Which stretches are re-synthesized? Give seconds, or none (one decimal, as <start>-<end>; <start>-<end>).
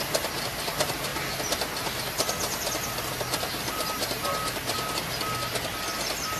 none